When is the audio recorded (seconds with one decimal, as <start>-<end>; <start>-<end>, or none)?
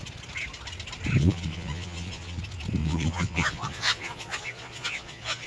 0.0-1.2; 2.4-2.8